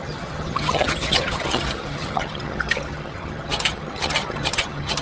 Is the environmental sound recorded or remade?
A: remade